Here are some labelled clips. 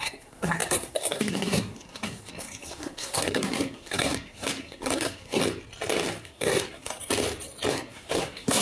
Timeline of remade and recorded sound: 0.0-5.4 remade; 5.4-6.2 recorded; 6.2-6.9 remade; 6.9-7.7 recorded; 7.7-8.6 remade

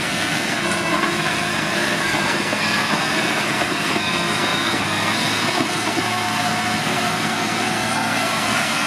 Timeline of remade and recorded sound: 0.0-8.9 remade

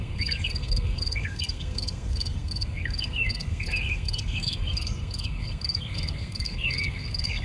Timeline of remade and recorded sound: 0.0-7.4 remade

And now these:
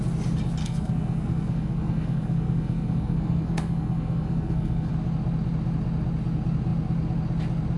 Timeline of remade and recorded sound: 0.0-0.6 recorded; 0.6-4.9 remade; 4.9-7.8 recorded